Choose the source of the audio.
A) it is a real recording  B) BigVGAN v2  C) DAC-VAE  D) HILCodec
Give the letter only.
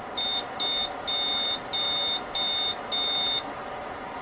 A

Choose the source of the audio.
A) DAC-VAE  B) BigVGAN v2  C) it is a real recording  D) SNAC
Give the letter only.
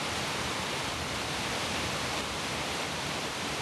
B